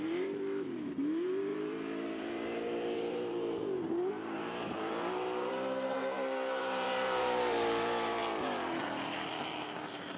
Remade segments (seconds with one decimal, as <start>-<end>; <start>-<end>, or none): 0.0-10.2